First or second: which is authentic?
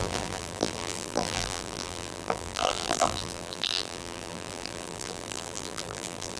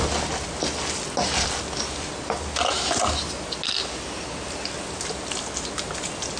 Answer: second